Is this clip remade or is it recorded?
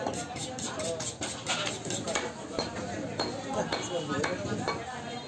recorded